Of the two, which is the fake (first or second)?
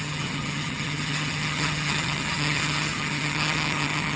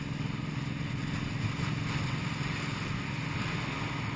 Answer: first